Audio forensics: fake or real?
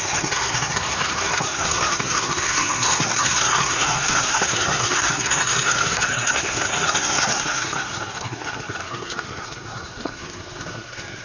fake